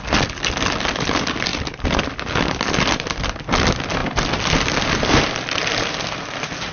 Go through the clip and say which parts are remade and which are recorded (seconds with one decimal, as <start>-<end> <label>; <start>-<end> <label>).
0.0-6.7 recorded